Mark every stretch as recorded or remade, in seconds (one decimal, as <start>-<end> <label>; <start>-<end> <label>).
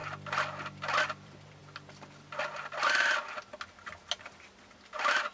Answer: 0.0-0.6 recorded; 0.6-1.6 remade; 1.6-4.8 recorded; 4.8-5.3 remade